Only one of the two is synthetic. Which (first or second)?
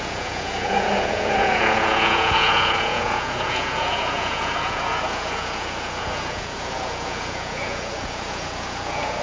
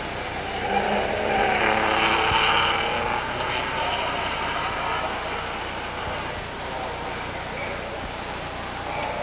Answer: first